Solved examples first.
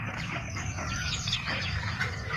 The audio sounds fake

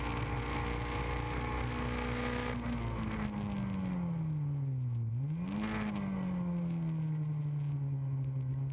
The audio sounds real